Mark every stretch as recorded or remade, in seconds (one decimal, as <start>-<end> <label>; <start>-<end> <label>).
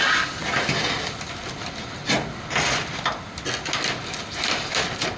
0.0-5.2 recorded